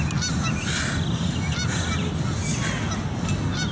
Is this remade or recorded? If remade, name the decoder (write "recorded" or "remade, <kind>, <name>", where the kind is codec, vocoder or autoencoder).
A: recorded